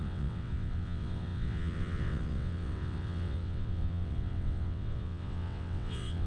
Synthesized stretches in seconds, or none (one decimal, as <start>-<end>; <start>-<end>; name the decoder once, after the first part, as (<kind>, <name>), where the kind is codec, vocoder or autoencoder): 0.0-6.3 (vocoder, WaveNeXt)